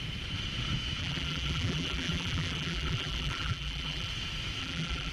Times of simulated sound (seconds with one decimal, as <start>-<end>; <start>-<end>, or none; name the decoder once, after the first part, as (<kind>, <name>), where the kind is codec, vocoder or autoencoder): 1.0-4.1 (vocoder, BigVGAN v2); 4.6-5.1